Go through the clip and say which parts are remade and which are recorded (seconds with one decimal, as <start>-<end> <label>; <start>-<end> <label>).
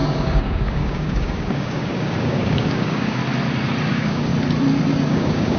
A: 0.0-3.2 remade; 3.2-3.9 recorded; 3.9-4.3 remade; 4.3-5.1 recorded; 5.1-5.6 remade